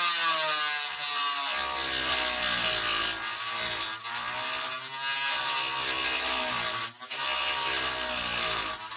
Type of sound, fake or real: real